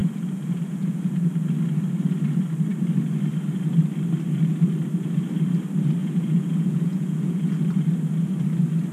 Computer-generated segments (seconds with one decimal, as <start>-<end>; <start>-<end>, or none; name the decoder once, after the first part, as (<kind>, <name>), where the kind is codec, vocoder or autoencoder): 0.0-1.4 (vocoder, Vocos); 6.0-7.6